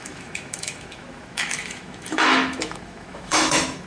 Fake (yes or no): yes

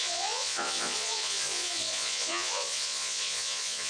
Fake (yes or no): yes